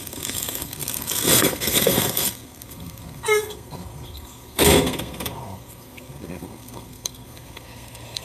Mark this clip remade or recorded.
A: remade